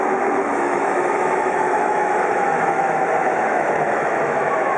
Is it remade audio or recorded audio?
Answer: remade